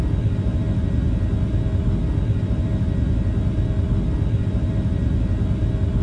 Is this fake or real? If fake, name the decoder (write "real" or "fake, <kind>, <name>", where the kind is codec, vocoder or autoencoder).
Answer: real